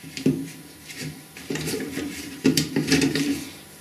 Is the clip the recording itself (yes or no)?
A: no